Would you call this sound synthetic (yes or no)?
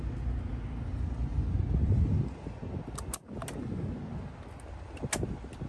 no